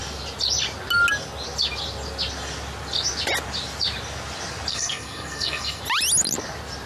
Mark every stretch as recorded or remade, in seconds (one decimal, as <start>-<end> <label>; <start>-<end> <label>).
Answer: 0.0-4.7 recorded; 4.7-5.8 remade; 5.8-6.9 recorded